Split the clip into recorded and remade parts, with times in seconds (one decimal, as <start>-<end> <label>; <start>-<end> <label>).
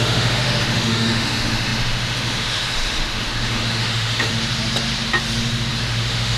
0.0-4.3 remade; 4.3-5.7 recorded; 5.7-6.4 remade